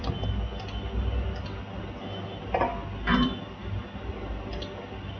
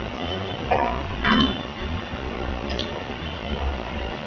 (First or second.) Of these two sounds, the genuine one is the first